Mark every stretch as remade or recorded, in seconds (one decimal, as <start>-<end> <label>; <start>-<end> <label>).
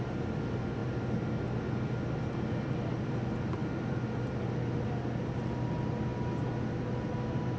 0.0-7.6 recorded